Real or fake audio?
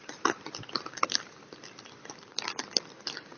fake